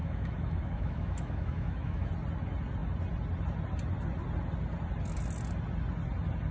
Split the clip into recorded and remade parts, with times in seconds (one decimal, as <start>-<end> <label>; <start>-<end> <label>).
0.0-2.1 remade; 2.1-6.5 recorded